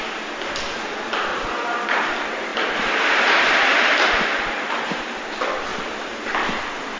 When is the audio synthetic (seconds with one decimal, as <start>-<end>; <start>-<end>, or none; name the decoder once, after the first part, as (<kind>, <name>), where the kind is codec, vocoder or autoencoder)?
1.3-2.1 (vocoder, BigVGAN v2); 2.5-5.2